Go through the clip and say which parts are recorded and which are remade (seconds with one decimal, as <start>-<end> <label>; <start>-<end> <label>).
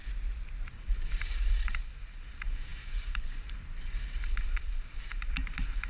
0.0-0.7 recorded; 0.7-5.9 remade